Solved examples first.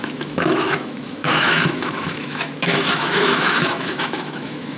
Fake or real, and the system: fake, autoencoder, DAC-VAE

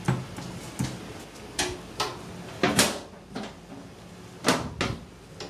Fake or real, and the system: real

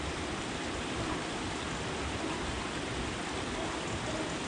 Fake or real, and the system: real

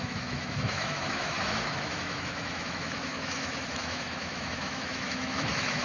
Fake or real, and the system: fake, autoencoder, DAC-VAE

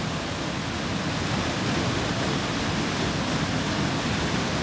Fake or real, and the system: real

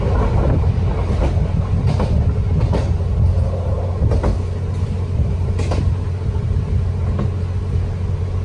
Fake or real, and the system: real